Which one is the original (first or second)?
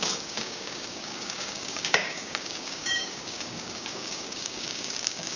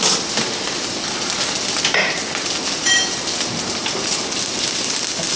second